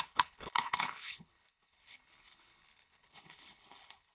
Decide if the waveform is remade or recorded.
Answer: remade